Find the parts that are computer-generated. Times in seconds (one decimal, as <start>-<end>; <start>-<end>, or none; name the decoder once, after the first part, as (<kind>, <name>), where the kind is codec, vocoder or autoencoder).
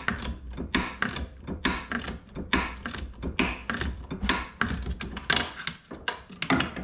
none